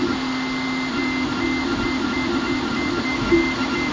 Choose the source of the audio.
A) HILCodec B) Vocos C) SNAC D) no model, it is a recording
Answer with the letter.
D